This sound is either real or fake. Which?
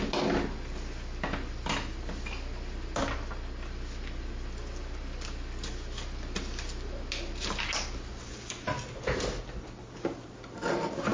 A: real